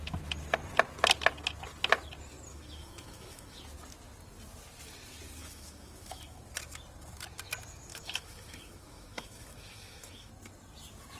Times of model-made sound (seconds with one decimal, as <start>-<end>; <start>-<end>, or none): 2.5-3.6; 5.4-6.4; 7.9-10.3